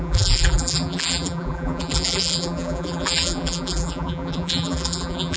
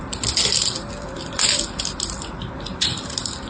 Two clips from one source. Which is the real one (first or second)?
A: second